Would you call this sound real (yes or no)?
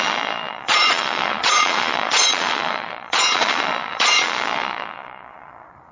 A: no